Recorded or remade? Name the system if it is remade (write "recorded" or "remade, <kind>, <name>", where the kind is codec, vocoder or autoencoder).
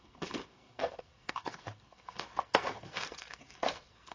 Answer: remade, codec, SNAC